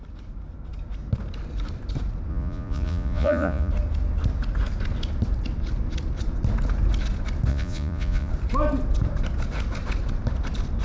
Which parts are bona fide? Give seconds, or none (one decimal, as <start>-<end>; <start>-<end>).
0.0-2.3; 3.7-7.5; 8.3-10.8